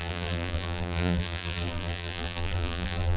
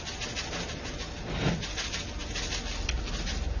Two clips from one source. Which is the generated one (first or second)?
first